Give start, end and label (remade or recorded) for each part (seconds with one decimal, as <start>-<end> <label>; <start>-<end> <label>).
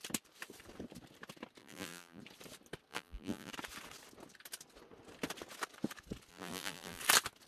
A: 0.0-1.6 recorded; 1.6-2.2 remade; 2.2-2.9 recorded; 2.9-3.5 remade; 3.5-6.3 recorded; 6.3-7.0 remade; 7.0-7.5 recorded